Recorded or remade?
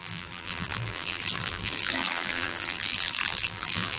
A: remade